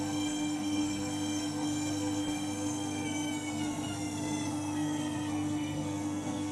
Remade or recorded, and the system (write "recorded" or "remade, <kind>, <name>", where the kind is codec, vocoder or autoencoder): remade, codec, SNAC